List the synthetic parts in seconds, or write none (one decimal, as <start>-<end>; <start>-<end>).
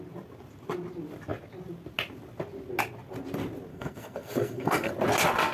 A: 3.7-4.9